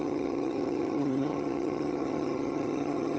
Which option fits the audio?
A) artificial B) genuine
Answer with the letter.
A